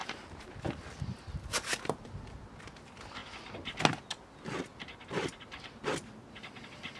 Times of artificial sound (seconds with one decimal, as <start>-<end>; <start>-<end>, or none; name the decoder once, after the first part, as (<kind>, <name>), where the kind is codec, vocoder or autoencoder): 0.0-0.5 (vocoder, BigVGAN v2)